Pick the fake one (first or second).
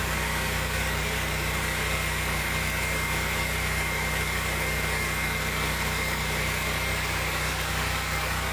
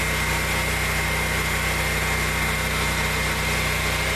first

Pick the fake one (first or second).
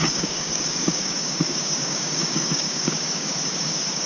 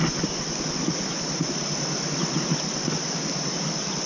first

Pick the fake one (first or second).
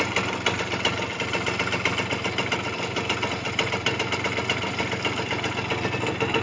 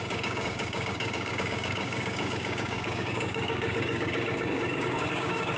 second